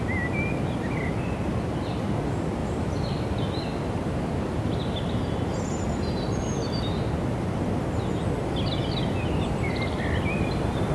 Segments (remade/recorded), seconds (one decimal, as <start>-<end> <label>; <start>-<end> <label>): 0.0-10.9 recorded